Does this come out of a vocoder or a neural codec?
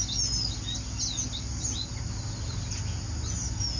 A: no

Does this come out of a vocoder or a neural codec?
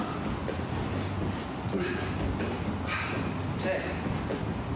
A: no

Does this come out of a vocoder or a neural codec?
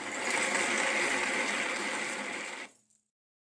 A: no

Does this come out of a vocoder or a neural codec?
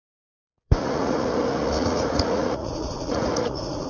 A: yes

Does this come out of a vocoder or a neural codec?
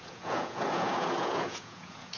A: yes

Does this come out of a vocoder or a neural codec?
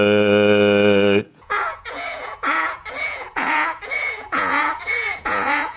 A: yes